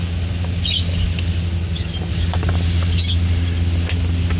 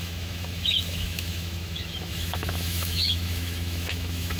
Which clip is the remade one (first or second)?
second